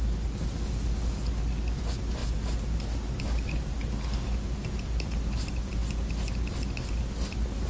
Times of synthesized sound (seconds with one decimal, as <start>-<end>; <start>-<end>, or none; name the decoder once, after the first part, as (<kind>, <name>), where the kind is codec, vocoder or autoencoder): 2.2-3.7 (vocoder, BigVGAN v2)